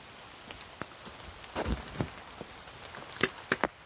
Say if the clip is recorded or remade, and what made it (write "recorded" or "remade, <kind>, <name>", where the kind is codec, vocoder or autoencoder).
recorded